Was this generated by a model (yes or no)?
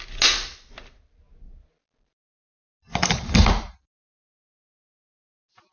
no